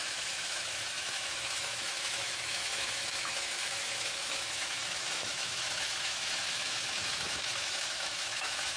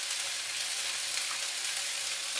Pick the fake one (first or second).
first